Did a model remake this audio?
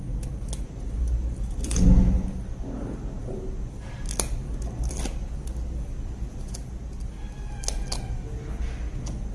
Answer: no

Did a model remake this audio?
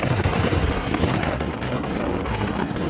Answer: yes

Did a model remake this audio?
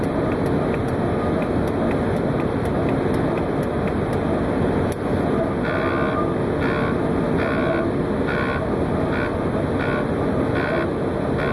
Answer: no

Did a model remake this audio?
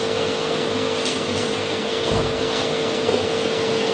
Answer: yes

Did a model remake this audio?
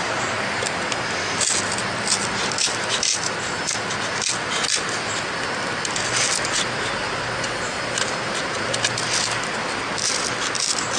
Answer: no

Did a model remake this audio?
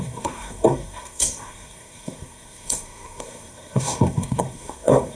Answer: yes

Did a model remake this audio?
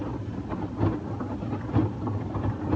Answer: no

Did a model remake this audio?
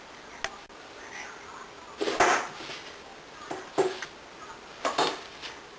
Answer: no